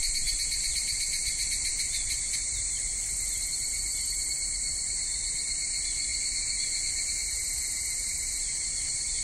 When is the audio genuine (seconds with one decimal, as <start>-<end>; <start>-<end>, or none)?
none